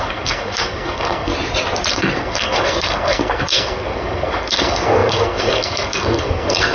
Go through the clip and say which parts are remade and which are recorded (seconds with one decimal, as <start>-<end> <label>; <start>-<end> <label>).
0.0-1.3 remade; 1.3-1.9 recorded; 1.9-6.7 remade